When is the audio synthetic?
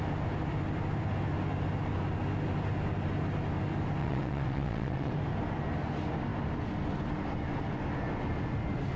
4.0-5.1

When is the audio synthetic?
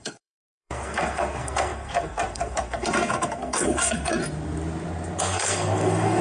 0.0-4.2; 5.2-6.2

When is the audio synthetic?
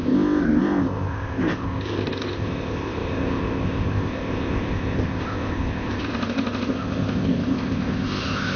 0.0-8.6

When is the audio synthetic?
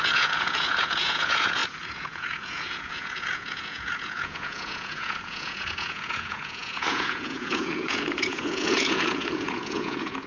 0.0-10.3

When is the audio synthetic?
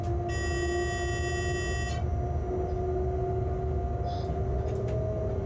none